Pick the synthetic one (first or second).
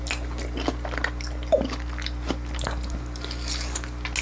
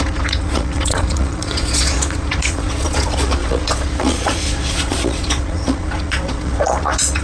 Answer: second